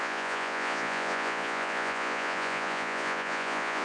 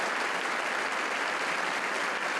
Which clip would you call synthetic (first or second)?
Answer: first